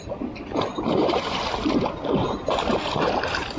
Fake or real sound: real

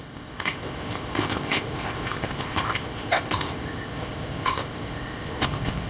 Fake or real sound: fake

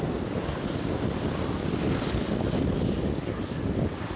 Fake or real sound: real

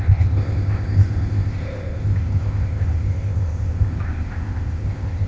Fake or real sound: fake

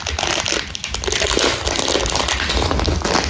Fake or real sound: real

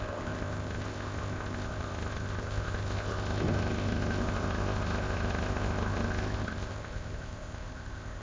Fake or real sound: fake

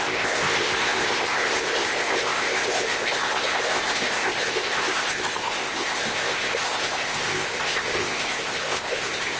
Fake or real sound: fake